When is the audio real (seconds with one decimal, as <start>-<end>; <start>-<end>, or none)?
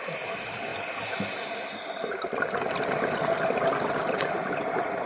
0.0-5.1